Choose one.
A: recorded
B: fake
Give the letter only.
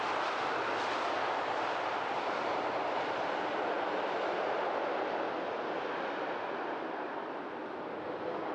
A